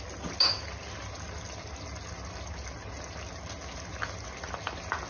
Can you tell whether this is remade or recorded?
recorded